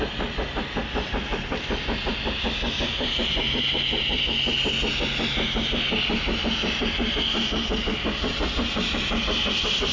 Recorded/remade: recorded